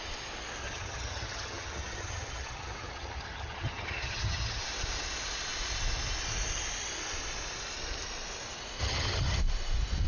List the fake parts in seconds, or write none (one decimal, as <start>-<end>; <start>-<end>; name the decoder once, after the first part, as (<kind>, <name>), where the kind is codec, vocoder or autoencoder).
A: 0.6-4.6 (vocoder, HiFi-GAN); 8.8-9.4